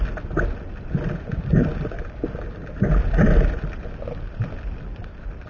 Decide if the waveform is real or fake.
real